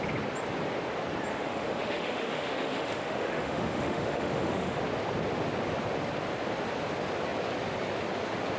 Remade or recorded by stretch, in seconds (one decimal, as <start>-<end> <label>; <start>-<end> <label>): 0.0-1.3 recorded; 1.3-4.8 remade; 4.8-8.6 recorded